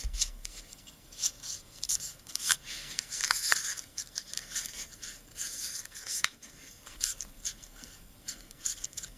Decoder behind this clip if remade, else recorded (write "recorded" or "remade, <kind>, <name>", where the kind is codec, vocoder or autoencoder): remade, codec, SNAC